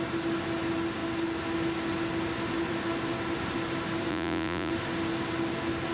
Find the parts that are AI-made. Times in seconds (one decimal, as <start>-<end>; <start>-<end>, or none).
4.1-4.7